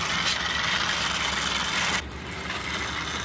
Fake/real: real